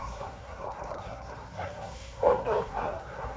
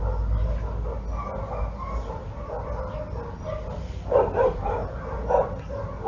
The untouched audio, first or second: second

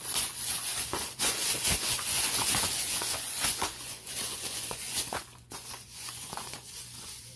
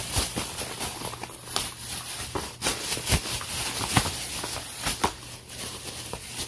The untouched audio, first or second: second